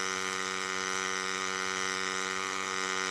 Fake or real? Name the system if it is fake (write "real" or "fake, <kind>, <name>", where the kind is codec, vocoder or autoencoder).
fake, autoencoder, DAC-VAE